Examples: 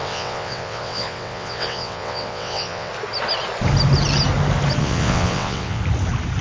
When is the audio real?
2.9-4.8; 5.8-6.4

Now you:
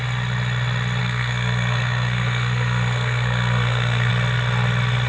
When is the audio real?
0.0-1.0; 4.1-5.1